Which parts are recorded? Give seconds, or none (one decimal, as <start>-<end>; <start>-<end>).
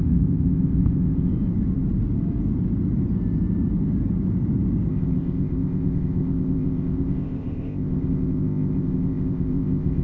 1.3-4.9